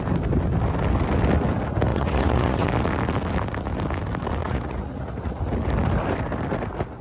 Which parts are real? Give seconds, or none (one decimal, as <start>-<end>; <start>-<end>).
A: 0.0-1.9; 2.7-4.4; 5.4-7.0